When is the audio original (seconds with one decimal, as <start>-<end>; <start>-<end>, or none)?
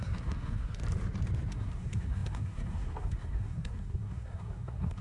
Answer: 0.8-1.5